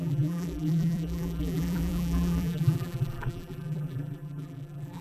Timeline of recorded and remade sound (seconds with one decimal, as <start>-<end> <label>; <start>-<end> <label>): 0.0-5.0 remade